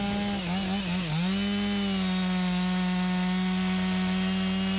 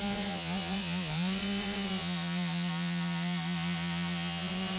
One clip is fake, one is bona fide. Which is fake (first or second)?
second